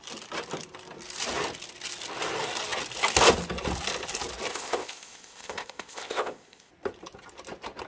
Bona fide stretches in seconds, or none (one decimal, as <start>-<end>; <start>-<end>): 0.0-4.5; 6.7-7.9